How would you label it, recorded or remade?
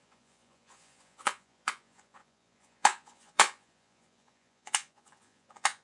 remade